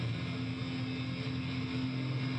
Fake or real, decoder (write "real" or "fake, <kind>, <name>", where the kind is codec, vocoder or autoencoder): real